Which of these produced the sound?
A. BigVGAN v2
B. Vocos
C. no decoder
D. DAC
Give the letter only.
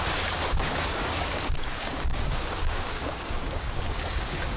D